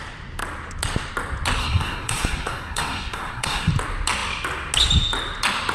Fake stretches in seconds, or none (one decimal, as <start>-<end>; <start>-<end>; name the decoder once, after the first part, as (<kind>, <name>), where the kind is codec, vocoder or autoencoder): 1.6-3.7 (codec, SNAC)